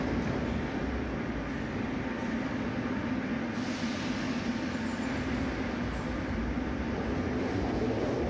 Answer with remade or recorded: recorded